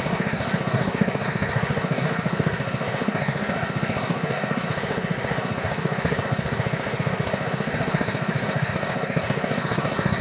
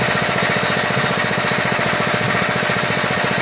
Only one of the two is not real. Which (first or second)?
first